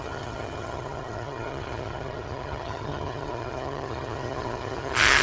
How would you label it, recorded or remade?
remade